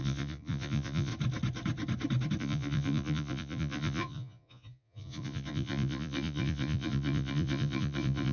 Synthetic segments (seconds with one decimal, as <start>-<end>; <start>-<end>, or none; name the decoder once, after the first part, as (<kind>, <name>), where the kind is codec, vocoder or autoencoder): 0.0-1.1 (vocoder, Vocos); 2.4-8.3